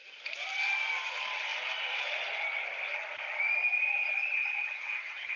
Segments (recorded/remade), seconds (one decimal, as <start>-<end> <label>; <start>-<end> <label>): 0.0-4.4 recorded; 4.4-5.4 remade